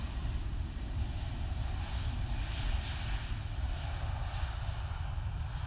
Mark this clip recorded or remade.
recorded